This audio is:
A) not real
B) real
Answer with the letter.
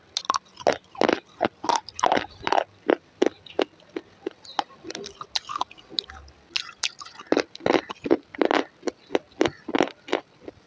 B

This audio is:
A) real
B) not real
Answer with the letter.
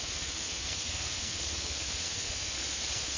B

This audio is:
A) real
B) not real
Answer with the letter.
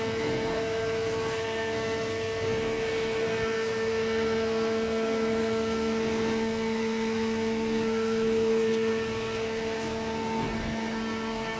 B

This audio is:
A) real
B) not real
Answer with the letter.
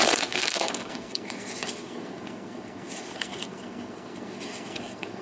B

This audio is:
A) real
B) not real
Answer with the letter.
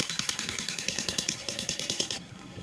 B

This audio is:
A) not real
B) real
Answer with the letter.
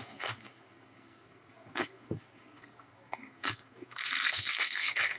A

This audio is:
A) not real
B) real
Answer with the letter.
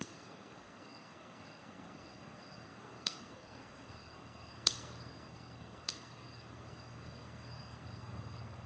A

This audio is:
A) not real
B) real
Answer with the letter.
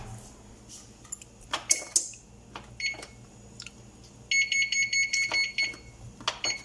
B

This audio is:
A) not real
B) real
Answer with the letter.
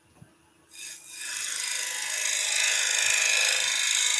B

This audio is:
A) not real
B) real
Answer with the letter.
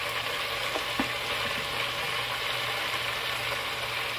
B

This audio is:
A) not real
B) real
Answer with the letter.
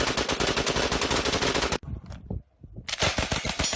B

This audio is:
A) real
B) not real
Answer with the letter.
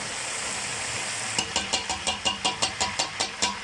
A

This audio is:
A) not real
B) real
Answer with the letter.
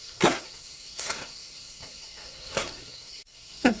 A